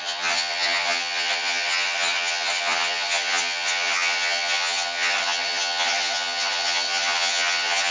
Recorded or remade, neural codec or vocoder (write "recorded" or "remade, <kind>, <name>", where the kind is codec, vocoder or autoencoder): remade, vocoder, HiFi-GAN